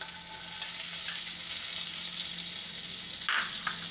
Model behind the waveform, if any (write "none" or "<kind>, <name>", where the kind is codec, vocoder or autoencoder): none